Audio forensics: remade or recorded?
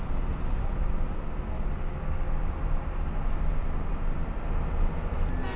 recorded